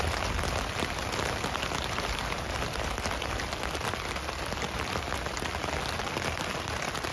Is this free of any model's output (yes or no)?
yes